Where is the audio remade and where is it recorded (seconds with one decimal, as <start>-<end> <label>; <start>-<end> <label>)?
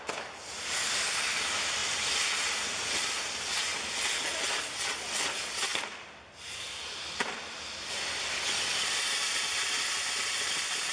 0.0-1.8 remade; 1.8-2.9 recorded; 2.9-3.7 remade; 3.7-5.2 recorded; 5.2-10.9 remade